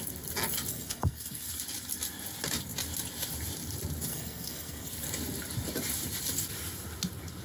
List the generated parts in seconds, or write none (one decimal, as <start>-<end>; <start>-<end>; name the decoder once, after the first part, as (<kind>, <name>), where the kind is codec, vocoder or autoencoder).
0.7-1.5 (codec, SNAC); 4.1-4.9